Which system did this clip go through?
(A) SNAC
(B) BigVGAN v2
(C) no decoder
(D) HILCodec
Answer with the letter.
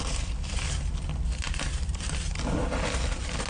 C